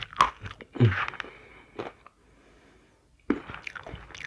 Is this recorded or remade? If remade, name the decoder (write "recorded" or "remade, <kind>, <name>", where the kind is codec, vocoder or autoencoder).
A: recorded